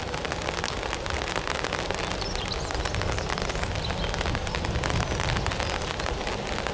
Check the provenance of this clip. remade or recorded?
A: recorded